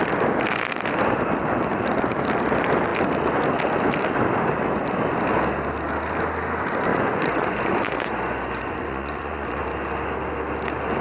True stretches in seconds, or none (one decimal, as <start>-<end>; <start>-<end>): 0.0-6.9; 9.6-11.0